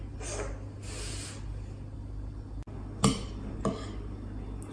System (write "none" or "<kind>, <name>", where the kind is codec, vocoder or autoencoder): none